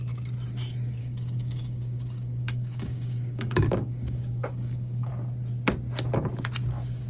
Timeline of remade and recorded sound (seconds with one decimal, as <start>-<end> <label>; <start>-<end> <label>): 0.0-1.0 recorded; 1.0-5.1 remade; 5.1-7.1 recorded